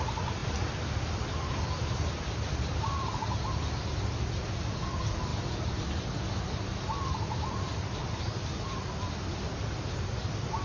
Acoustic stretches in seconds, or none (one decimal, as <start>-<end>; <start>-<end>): 0.0-10.6